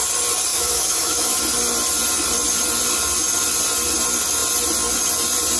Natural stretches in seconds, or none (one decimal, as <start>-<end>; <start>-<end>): 0.0-0.5; 1.4-5.6